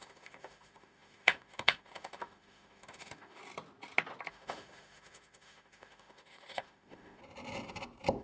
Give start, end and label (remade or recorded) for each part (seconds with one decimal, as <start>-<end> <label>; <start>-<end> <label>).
0.0-3.4 remade; 3.4-4.3 recorded; 4.3-7.2 remade; 7.2-8.2 recorded